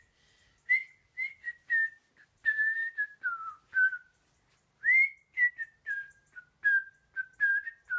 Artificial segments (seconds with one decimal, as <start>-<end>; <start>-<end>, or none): none